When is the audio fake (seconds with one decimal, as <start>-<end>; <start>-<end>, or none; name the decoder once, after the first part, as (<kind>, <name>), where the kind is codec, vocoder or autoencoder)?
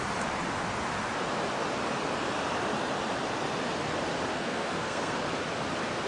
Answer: 4.3-5.2 (codec, SNAC)